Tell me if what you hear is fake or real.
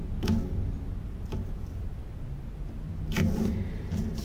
real